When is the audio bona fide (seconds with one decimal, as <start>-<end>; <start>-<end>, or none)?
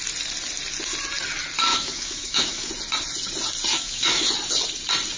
0.0-1.7; 2.7-3.7; 4.3-5.2